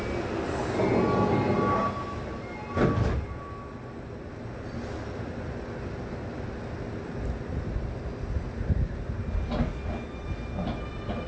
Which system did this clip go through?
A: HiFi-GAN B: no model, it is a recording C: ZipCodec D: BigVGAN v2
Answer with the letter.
B